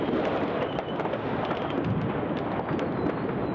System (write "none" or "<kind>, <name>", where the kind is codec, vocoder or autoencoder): none